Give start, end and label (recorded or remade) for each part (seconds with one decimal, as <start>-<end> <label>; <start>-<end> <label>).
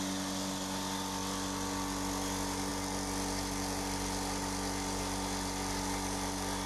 0.0-6.7 recorded